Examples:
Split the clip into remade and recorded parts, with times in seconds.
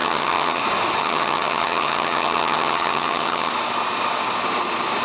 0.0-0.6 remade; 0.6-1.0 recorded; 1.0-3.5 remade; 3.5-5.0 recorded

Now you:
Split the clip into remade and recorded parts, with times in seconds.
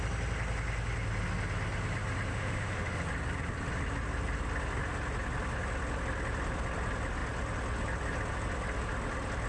0.0-2.3 recorded; 2.3-3.0 remade; 3.0-9.5 recorded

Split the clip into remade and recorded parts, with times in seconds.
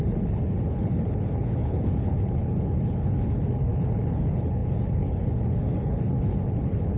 0.0-7.0 remade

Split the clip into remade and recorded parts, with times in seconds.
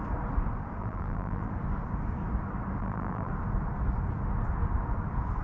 0.0-0.8 recorded; 0.8-1.5 remade; 1.5-2.8 recorded; 2.8-3.3 remade; 3.3-5.4 recorded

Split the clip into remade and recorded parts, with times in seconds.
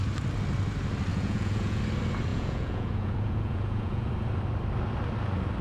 0.0-1.1 recorded; 1.1-1.8 remade; 1.8-2.3 recorded; 2.3-4.1 remade; 4.1-5.6 recorded